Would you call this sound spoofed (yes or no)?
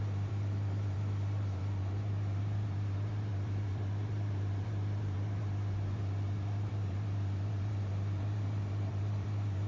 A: yes